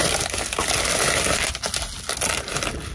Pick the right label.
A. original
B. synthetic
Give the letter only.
A